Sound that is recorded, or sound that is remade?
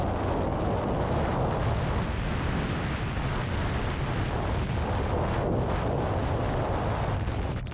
recorded